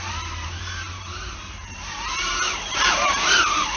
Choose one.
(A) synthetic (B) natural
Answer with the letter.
A